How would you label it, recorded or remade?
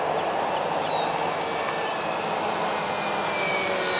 recorded